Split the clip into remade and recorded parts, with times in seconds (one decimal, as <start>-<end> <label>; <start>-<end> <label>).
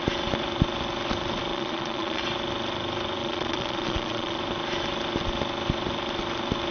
0.0-1.5 recorded; 1.5-2.2 remade; 2.2-3.2 recorded; 3.2-4.4 remade; 4.4-6.7 recorded